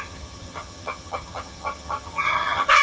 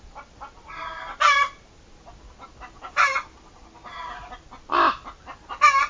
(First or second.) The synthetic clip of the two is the first